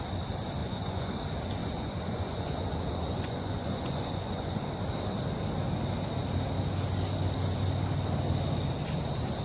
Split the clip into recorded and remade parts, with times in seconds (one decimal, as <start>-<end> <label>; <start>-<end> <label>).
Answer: 0.0-0.6 recorded; 0.6-1.1 remade; 1.1-1.6 recorded; 1.6-4.6 remade; 4.6-9.4 recorded